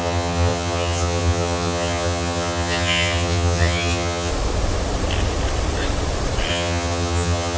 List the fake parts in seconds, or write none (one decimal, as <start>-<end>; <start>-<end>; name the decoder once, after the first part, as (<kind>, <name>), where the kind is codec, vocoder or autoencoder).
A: 0.0-4.3 (vocoder, HiFi-GAN); 6.5-7.6